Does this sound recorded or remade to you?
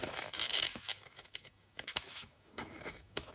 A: remade